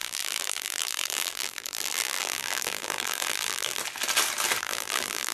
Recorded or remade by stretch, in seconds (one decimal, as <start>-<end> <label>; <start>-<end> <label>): 0.0-3.8 remade; 3.8-4.6 recorded; 4.6-5.3 remade